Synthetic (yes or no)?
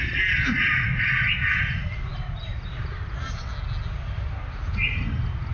no